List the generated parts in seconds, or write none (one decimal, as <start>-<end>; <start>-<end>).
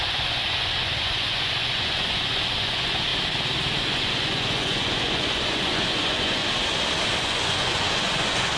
0.0-3.1; 3.8-6.4; 7.2-8.6